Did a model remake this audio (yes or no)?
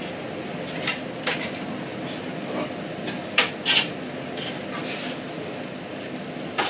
no